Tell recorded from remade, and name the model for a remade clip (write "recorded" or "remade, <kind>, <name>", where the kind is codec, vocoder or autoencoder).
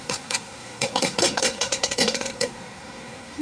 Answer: remade, codec, SNAC